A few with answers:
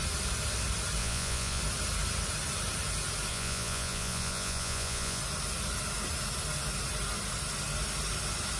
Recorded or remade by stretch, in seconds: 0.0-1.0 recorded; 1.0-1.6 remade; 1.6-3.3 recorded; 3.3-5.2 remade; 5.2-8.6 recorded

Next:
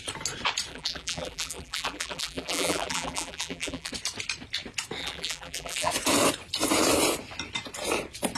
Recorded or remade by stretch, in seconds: 0.0-0.7 recorded; 0.7-3.9 remade; 3.9-5.0 recorded; 5.0-5.9 remade; 5.9-8.4 recorded

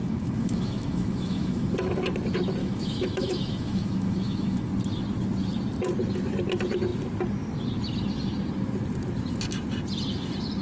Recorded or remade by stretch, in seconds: 0.0-1.7 remade; 1.7-2.6 recorded; 2.6-4.7 remade; 4.7-10.6 recorded

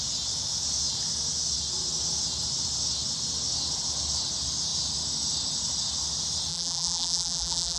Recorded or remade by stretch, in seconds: 0.0-6.5 recorded; 6.5-7.8 remade